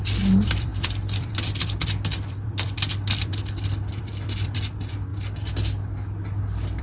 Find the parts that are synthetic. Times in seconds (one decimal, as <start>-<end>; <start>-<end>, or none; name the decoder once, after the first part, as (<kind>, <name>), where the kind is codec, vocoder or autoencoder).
0.0-3.3 (vocoder, BigVGAN v2); 3.9-5.1